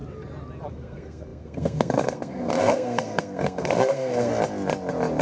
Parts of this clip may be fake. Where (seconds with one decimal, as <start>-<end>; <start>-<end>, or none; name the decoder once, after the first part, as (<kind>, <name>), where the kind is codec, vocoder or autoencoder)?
0.7-4.3 (codec, SNAC)